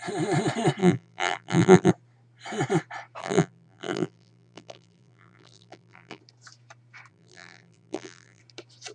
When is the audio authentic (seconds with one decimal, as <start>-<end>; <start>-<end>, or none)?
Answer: 0.0-0.8; 1.9-3.2; 6.2-7.1; 8.4-8.9